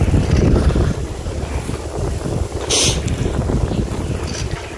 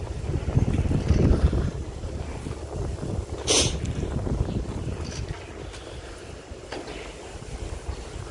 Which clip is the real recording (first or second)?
first